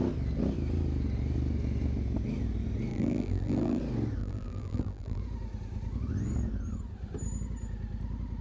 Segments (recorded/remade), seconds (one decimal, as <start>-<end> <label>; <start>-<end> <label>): 0.0-2.9 recorded; 2.9-3.8 remade; 3.8-4.2 recorded; 4.2-5.2 remade; 5.2-8.4 recorded